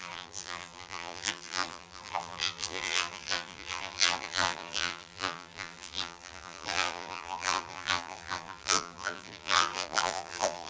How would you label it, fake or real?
fake